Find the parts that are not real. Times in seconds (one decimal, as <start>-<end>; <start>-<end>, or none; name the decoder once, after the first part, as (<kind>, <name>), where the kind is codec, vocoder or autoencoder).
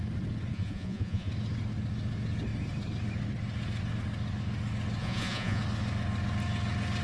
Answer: 0.5-1.3 (vocoder, Vocos); 5.0-5.6